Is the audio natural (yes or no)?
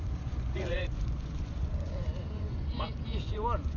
no